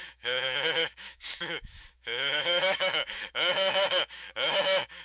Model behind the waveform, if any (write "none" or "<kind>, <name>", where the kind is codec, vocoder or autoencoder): autoencoder, DAC-VAE